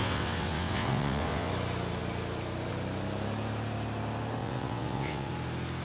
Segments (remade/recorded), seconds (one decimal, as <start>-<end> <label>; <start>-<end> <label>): 0.0-1.5 remade; 1.5-4.4 recorded; 4.4-5.3 remade; 5.3-5.8 recorded